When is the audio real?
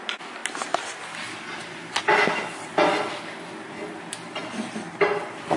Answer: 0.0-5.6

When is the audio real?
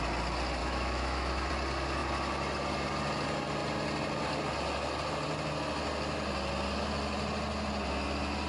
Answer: 0.0-0.6; 1.5-8.5